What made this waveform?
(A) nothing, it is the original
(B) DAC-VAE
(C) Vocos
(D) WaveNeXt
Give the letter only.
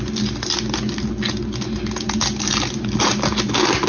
A